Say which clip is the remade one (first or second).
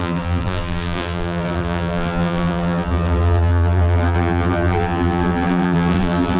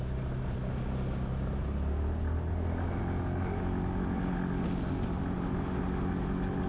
first